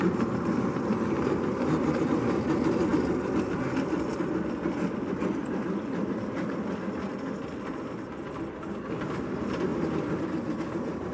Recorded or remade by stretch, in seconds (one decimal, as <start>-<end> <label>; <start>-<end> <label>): 0.0-5.4 recorded; 5.4-6.5 remade; 6.5-9.7 recorded; 9.7-11.1 remade